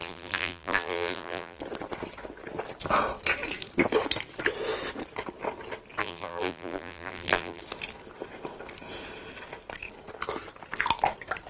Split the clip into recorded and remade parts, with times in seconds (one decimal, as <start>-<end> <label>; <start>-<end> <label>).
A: 0.0-1.6 remade; 1.6-6.0 recorded; 6.0-7.6 remade; 7.6-11.5 recorded